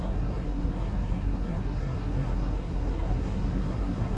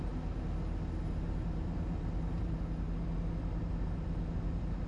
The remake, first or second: first